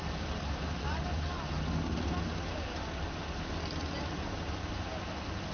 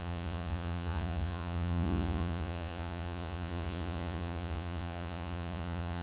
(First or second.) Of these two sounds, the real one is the first